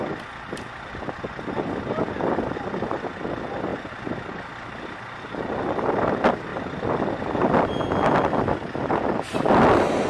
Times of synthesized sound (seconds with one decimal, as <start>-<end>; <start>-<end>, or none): 6.5-7.2